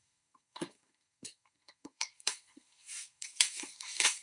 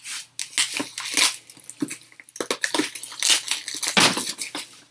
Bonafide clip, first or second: second